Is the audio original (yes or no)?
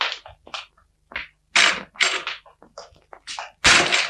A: yes